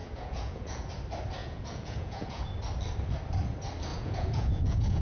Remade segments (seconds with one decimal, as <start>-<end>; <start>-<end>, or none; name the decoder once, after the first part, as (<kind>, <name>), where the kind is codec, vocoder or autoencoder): 0.0-0.9 (vocoder, Vocos); 1.4-2.5; 3.9-5.0